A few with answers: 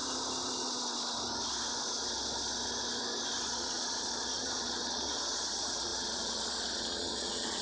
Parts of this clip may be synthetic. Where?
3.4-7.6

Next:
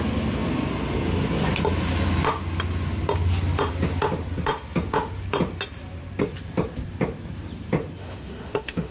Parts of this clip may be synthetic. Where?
8.0-8.9

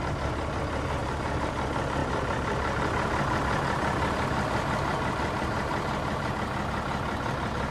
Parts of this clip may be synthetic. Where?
1.0-1.5; 2.0-6.3